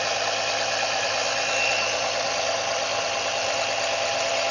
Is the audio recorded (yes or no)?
yes